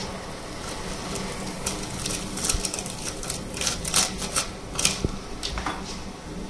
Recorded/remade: recorded